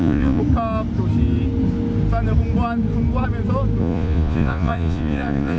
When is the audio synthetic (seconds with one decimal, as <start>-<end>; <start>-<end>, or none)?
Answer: 0.0-0.4; 3.8-5.6